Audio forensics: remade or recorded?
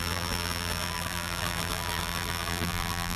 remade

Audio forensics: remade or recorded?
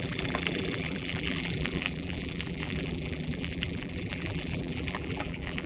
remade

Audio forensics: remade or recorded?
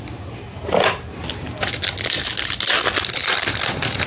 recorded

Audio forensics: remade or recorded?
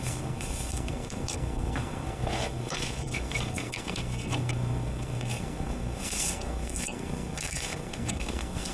remade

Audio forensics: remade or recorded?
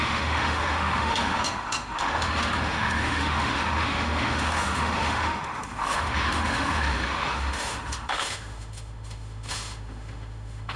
remade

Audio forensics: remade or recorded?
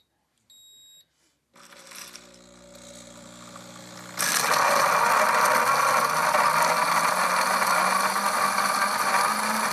recorded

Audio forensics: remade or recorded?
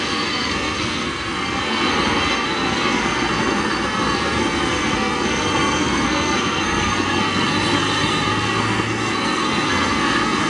remade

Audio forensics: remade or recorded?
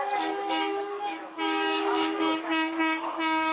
remade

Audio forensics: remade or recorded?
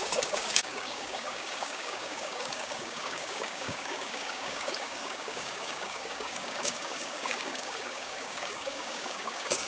remade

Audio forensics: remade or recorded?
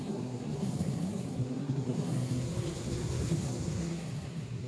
remade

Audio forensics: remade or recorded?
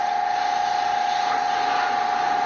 recorded